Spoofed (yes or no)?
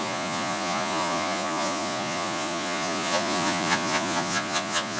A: yes